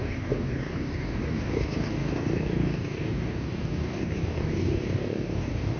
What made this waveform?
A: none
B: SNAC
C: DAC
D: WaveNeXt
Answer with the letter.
C